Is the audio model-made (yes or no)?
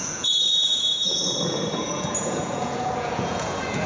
yes